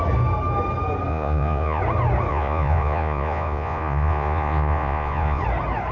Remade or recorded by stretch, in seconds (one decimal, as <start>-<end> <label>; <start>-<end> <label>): 0.0-1.1 recorded; 1.1-1.8 remade; 1.8-2.3 recorded; 2.3-5.4 remade; 5.4-5.9 recorded